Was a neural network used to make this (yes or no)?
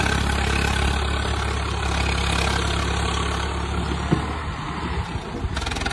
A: no